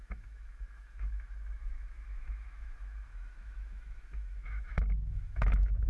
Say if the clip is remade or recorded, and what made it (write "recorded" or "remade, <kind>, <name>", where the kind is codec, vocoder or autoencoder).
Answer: remade, autoencoder, DAC-VAE